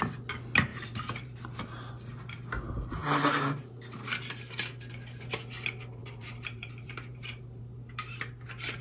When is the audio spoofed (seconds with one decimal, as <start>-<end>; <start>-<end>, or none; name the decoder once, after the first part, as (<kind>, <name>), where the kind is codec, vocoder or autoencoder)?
0.7-1.9 (vocoder, BigVGAN v2); 6.0-7.6